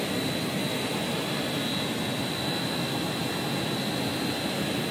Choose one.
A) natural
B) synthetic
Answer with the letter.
A